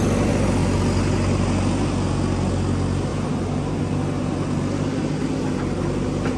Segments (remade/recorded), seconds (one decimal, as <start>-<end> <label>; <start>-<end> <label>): 0.0-3.1 recorded; 3.1-3.8 remade; 3.8-6.4 recorded